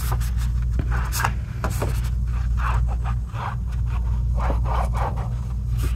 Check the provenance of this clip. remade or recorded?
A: recorded